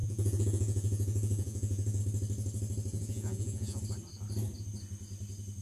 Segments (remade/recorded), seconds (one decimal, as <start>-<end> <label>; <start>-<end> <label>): 0.0-2.0 remade; 2.0-2.9 recorded; 2.9-3.8 remade; 3.8-5.6 recorded